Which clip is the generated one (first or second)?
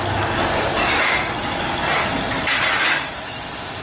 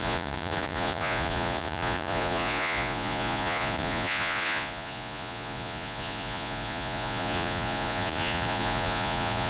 second